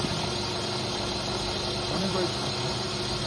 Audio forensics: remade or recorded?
recorded